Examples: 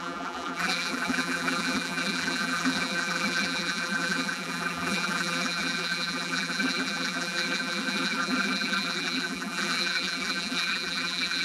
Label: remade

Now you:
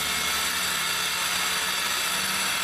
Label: recorded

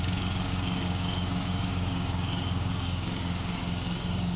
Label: remade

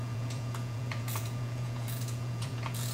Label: remade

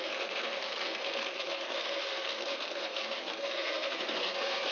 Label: remade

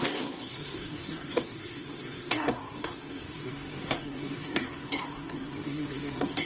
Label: remade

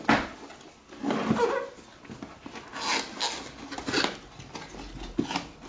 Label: recorded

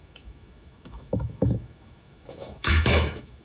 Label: remade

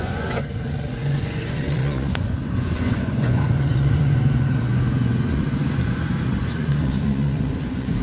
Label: remade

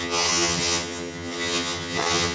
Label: remade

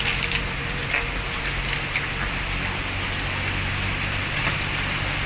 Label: recorded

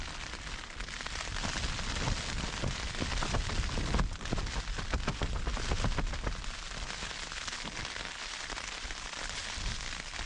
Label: recorded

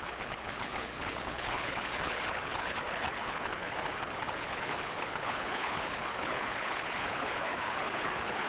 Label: remade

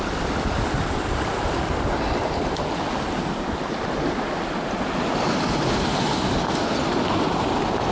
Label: recorded